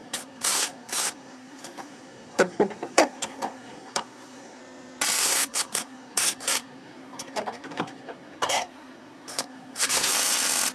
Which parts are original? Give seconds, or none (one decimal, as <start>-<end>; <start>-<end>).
4.6-5.2; 10.1-10.7